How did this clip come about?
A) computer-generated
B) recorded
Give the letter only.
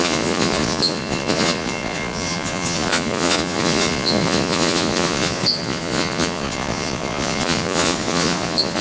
A